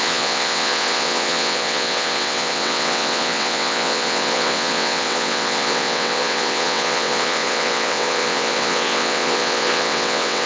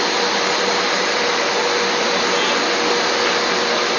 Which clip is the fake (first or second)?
first